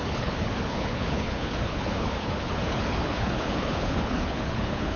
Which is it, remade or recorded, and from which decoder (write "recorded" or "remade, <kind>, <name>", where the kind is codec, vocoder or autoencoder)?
remade, codec, HILCodec